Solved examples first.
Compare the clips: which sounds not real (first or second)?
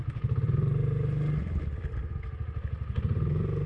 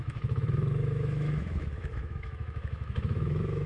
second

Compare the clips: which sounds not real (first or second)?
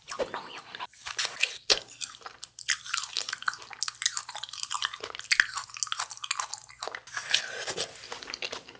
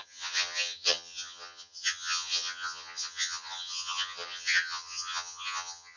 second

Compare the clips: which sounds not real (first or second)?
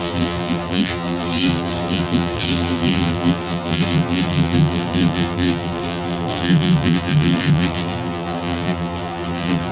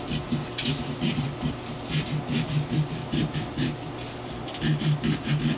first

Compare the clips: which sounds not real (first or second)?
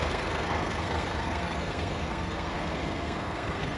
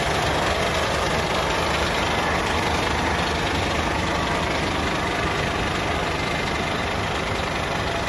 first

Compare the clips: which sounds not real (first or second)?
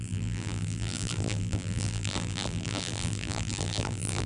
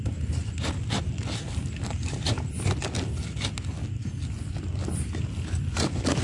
first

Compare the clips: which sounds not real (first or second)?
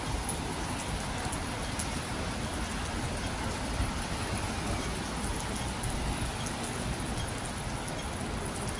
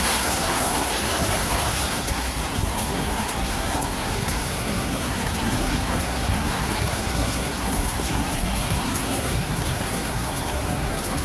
second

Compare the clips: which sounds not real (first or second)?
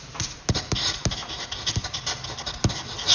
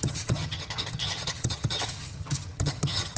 second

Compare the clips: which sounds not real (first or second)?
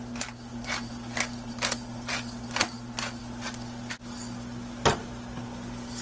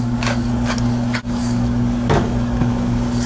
second